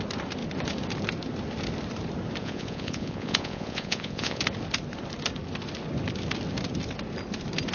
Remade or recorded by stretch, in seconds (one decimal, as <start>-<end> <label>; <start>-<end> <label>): 0.0-2.4 recorded; 2.4-4.4 remade; 4.4-7.7 recorded